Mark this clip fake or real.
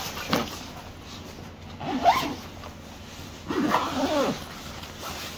real